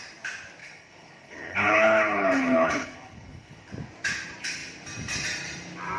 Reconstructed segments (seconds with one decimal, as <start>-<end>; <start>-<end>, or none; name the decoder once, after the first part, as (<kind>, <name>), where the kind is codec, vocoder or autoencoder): 0.6-3.7 (codec, HILCodec)